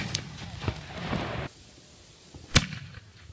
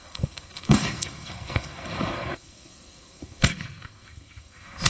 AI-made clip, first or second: second